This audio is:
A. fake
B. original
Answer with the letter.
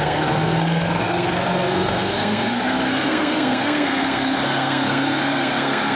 A